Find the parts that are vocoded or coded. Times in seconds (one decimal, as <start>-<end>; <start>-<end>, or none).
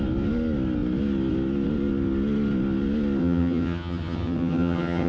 3.2-5.1